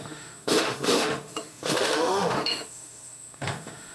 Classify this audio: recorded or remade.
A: remade